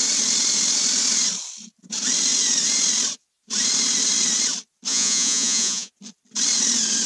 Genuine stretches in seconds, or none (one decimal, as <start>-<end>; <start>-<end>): 0.0-4.9; 5.9-7.1